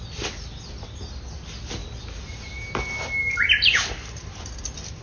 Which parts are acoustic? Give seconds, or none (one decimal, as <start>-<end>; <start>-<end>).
0.0-5.0